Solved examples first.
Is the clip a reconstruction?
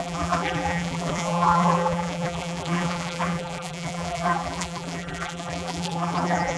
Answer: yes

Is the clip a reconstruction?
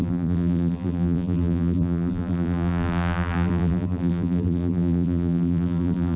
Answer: yes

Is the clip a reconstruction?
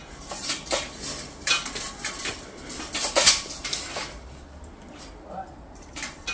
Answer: no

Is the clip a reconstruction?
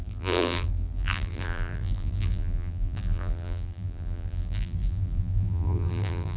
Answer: yes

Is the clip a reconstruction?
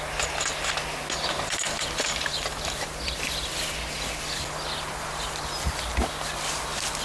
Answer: no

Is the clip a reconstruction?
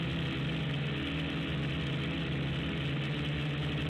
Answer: no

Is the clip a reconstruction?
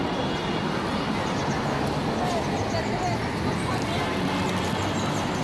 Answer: no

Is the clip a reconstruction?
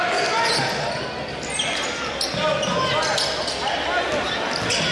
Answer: no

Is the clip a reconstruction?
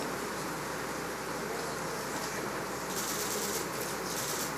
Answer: no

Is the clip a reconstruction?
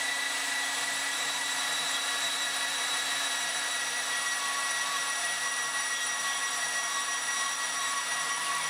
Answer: yes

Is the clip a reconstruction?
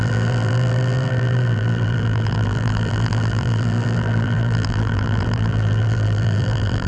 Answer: yes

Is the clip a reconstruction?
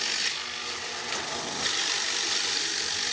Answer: no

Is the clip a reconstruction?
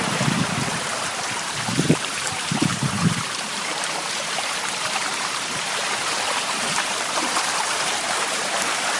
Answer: yes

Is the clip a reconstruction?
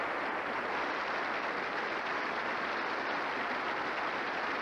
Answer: no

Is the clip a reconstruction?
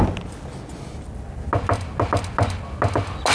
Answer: no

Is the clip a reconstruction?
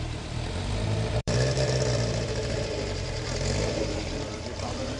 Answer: yes